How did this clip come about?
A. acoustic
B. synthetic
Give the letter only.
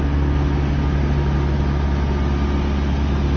A